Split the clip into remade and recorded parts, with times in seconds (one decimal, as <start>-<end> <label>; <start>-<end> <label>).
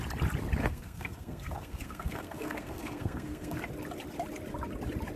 0.0-0.6 recorded; 0.6-3.6 remade; 3.6-5.2 recorded